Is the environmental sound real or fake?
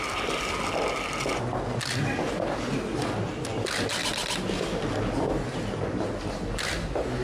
real